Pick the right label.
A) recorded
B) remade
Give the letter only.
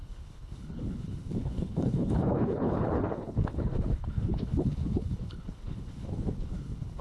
B